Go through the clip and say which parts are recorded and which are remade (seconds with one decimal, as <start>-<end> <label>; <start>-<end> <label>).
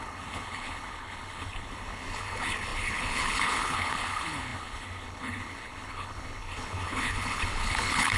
0.0-8.2 remade